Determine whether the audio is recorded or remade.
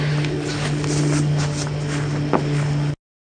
recorded